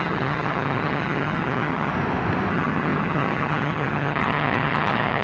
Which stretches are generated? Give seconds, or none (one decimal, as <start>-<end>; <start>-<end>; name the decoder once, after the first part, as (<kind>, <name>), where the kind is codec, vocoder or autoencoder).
0.0-1.9 (vocoder, HiFi-GAN); 2.5-5.2